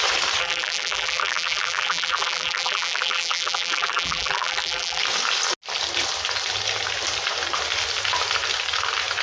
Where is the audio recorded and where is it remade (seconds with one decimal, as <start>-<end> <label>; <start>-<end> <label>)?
0.0-0.4 recorded; 0.4-5.0 remade; 5.0-9.2 recorded